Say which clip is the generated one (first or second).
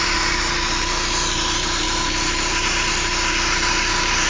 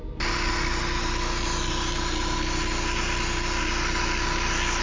first